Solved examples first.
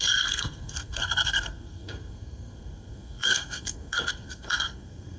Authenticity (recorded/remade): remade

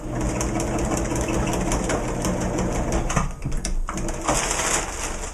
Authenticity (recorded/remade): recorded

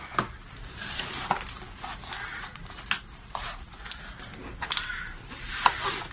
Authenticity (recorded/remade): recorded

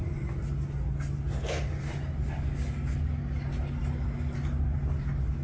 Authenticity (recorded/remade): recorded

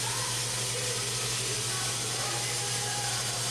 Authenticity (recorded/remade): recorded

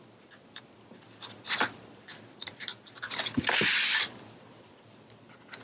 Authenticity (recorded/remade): remade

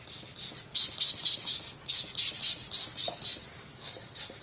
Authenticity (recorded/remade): recorded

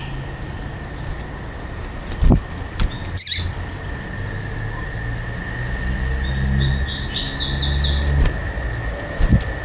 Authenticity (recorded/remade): recorded